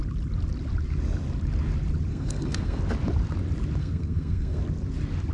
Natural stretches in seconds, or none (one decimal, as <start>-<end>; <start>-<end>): 0.0-2.1; 2.8-3.8; 4.6-5.3